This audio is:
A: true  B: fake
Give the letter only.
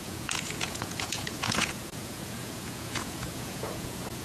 B